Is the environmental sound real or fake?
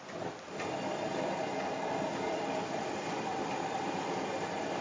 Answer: fake